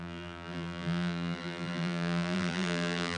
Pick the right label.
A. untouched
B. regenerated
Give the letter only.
B